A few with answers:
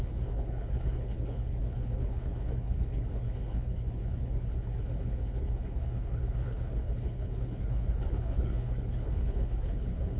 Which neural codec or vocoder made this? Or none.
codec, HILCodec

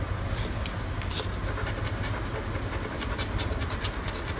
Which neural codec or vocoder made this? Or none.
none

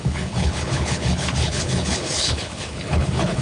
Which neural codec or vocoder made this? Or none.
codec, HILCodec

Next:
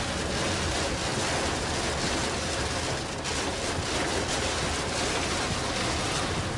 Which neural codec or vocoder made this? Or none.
none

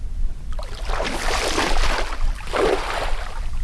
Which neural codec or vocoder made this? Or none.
none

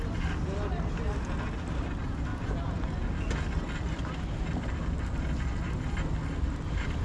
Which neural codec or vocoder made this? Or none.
none